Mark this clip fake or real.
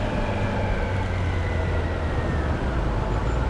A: real